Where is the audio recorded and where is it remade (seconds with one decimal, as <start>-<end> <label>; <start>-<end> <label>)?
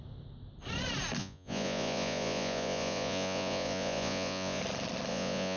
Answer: 0.0-1.2 recorded; 1.2-4.6 remade; 4.6-5.1 recorded; 5.1-5.6 remade